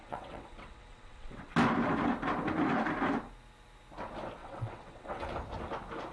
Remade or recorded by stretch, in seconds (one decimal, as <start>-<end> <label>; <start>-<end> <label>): 0.0-1.5 remade; 1.5-4.4 recorded; 4.4-5.3 remade; 5.3-6.1 recorded